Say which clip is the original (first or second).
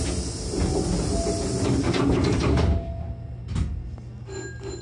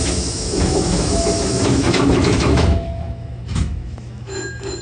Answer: first